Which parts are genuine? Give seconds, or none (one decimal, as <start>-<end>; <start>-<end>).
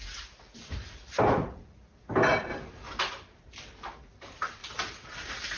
0.0-5.6